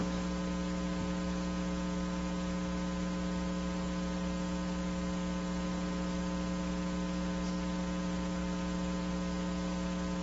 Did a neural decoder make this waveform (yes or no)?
no